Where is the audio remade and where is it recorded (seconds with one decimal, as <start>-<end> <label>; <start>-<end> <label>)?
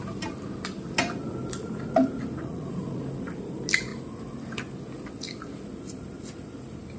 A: 0.0-2.4 recorded; 2.4-3.0 remade; 3.0-7.0 recorded